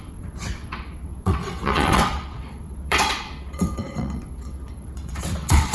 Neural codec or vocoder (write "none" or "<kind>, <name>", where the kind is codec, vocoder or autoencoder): vocoder, WaveNeXt